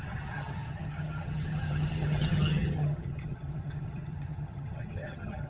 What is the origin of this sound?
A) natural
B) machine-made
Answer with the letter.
B